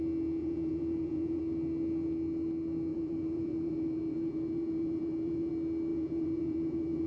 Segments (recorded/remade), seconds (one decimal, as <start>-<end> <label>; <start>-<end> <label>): 0.0-0.4 recorded; 0.4-1.4 remade; 1.4-2.9 recorded; 2.9-5.5 remade; 5.5-5.9 recorded; 5.9-7.1 remade